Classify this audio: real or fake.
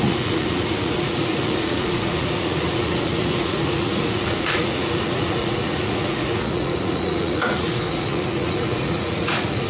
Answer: fake